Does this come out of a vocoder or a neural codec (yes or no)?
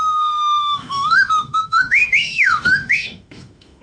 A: yes